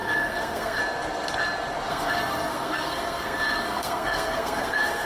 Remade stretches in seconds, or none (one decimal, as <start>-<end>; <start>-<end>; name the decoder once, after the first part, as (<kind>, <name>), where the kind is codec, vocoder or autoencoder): 0.0-0.8 (codec, SNAC); 1.9-5.1